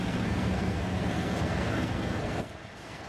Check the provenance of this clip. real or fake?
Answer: fake